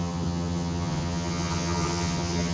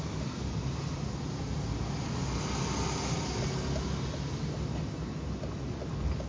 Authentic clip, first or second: second